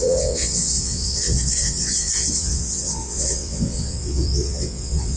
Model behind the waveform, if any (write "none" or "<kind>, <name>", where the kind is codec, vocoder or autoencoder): vocoder, WaveNeXt